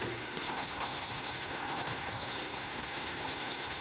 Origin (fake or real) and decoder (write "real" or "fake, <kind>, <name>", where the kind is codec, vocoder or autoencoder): fake, codec, SNAC